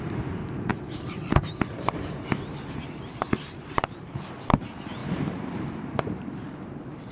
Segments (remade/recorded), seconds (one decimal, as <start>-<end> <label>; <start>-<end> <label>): 0.0-7.1 remade